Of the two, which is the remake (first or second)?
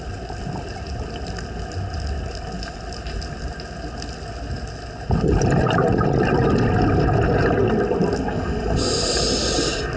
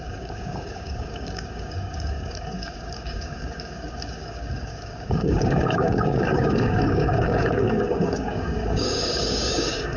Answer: second